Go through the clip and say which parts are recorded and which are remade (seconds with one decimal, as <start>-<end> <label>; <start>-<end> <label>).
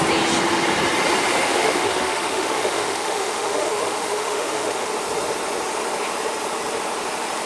0.0-1.4 recorded; 1.4-4.9 remade; 4.9-7.5 recorded